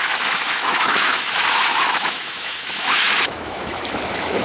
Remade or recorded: remade